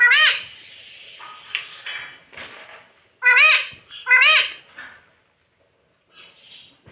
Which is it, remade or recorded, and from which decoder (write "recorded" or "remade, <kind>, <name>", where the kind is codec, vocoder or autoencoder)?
recorded